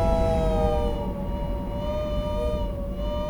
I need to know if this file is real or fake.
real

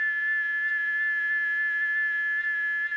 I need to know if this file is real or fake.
real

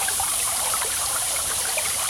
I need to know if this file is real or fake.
fake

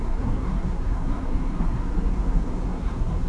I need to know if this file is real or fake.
fake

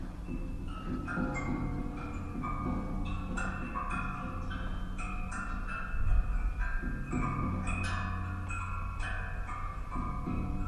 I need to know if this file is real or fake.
real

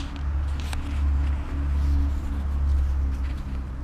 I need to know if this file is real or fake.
real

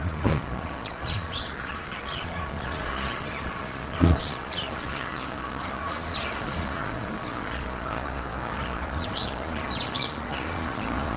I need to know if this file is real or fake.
fake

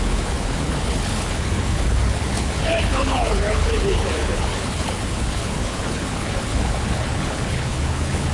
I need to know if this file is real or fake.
fake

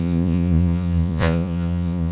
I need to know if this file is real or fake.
fake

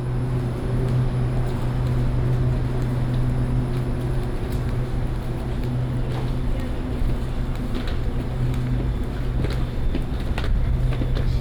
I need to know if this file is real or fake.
real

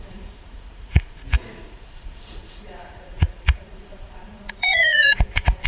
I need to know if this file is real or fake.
fake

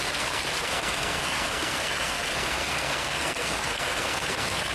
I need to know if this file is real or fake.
fake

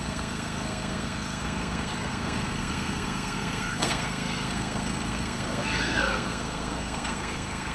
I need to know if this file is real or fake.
fake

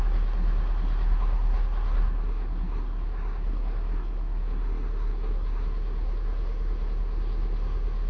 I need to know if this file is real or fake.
fake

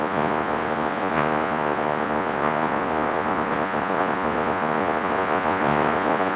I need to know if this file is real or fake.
fake